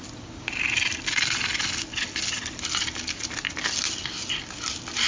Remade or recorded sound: recorded